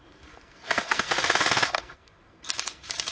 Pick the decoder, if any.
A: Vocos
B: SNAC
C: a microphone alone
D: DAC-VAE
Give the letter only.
B